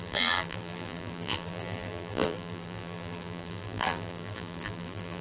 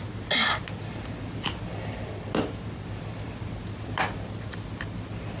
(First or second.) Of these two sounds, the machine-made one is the first